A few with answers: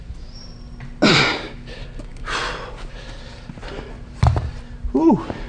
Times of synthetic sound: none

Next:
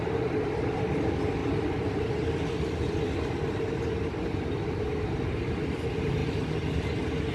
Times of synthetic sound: none

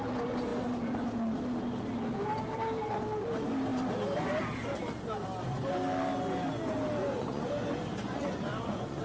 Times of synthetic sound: 7.0-7.5 (vocoder, Vocos); 8.0-9.0